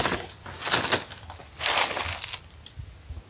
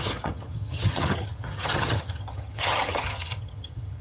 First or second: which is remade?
second